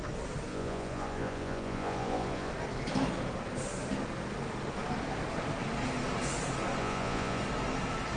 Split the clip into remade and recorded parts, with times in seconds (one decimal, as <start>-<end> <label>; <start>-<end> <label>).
0.0-0.5 recorded; 0.5-2.5 remade; 2.5-6.8 recorded; 6.8-7.4 remade; 7.4-8.2 recorded